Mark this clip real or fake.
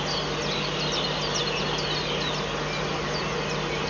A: real